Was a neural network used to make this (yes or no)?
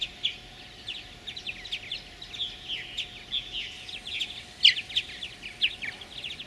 no